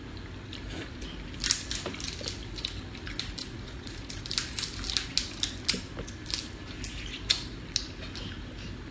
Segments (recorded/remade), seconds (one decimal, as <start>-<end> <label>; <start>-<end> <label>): 0.0-3.4 recorded; 3.4-4.2 remade; 4.2-8.9 recorded